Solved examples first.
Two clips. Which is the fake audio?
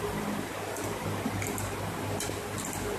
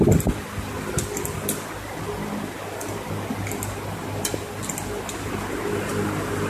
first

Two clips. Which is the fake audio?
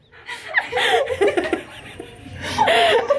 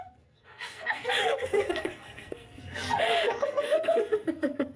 second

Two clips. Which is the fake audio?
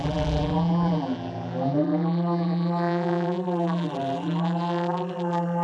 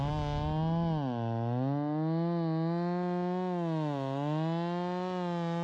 first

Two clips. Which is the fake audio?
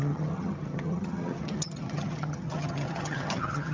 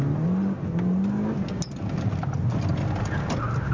first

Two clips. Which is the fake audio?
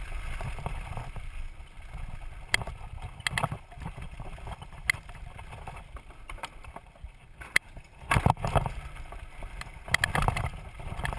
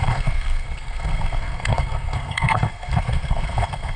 second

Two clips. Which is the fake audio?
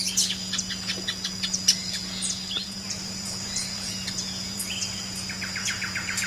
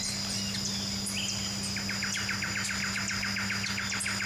first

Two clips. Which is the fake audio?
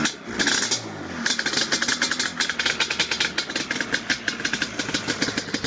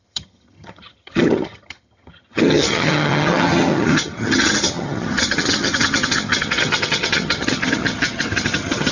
second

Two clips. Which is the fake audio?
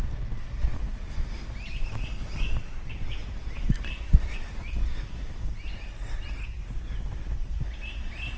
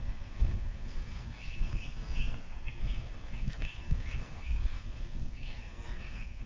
second